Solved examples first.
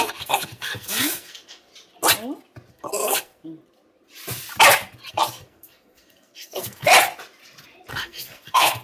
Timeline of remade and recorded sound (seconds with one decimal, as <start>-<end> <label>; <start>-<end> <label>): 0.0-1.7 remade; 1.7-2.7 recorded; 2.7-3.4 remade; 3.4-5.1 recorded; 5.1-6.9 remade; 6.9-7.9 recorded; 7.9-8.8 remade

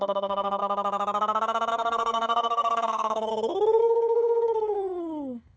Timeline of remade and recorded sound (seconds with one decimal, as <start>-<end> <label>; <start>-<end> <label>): 0.0-0.6 remade; 0.6-1.7 recorded; 1.7-3.3 remade; 3.3-3.8 recorded; 3.8-5.6 remade

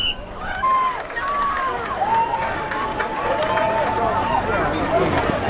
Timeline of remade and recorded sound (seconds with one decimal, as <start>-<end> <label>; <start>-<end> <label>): 0.0-3.3 remade; 3.3-5.5 recorded